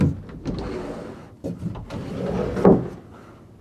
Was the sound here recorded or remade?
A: recorded